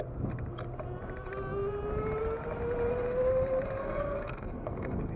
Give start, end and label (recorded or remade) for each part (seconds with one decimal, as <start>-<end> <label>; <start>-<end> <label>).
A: 0.0-3.8 recorded; 3.8-5.2 remade